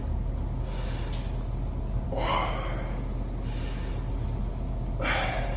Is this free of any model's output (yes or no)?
yes